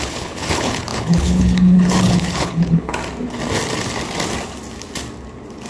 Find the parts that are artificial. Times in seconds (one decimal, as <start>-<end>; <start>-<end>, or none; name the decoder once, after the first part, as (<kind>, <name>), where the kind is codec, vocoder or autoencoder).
0.0-3.0 (codec, HILCodec)

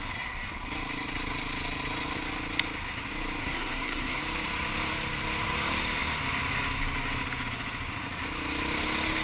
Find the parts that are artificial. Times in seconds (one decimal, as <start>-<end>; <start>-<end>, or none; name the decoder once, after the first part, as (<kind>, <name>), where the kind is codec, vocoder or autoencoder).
3.4-4.2 (codec, SNAC)

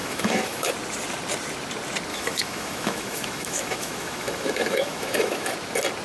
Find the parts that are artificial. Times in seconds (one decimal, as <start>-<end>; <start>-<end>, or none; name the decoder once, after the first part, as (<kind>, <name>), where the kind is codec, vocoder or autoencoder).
0.0-0.7 (autoencoder, DAC-VAE); 2.1-5.5

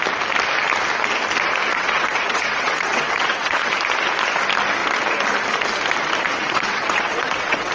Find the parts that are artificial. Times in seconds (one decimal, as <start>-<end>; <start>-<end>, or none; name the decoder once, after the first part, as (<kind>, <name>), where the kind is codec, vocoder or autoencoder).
1.7-3.7 (vocoder, WaveNeXt); 6.4-7.7

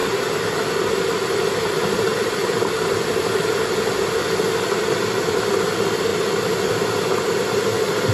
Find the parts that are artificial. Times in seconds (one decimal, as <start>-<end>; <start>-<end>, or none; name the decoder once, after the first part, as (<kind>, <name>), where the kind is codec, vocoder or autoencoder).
0.0-1.4 (vocoder, BigVGAN v2); 2.1-3.3; 6.1-6.7

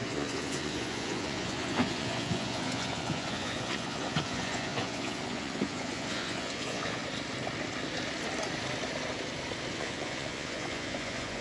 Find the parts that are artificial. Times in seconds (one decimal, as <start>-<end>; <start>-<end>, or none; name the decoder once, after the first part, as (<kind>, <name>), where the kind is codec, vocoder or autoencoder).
0.0-7.0 (vocoder, Vocos); 9.7-11.4

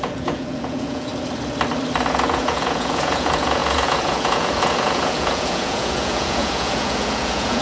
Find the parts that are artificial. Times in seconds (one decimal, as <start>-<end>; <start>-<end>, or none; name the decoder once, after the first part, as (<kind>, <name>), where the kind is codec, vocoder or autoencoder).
0.0-1.1 (vocoder, Vocos); 2.1-7.6

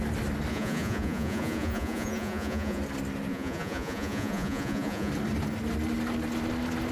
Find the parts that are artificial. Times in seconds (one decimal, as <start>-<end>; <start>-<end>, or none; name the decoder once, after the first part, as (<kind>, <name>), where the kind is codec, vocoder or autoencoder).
0.5-2.8 (vocoder, Vocos); 3.3-5.1